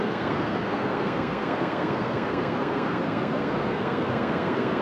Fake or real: fake